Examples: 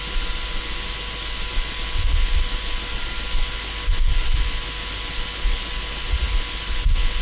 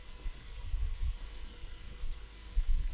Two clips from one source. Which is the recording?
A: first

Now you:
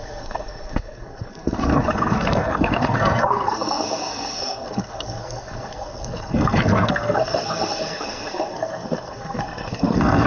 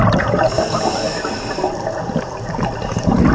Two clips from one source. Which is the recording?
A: second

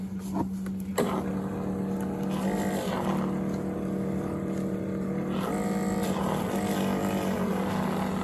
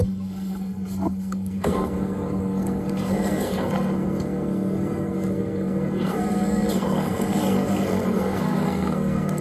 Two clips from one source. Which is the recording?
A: first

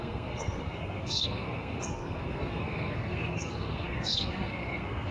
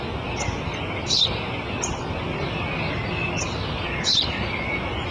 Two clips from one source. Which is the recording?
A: second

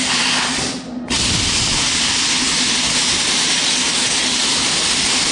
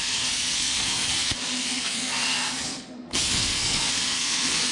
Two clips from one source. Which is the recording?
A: first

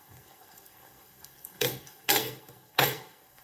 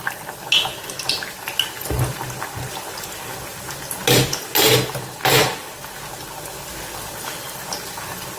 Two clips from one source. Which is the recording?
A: second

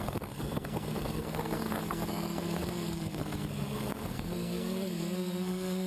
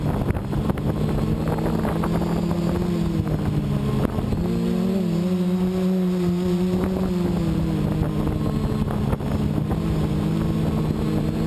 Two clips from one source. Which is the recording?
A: second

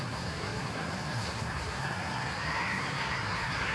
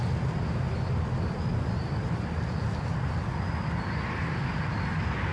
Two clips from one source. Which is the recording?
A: second